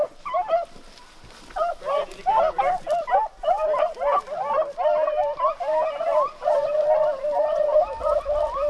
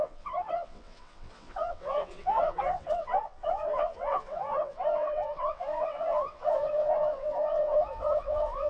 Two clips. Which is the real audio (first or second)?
first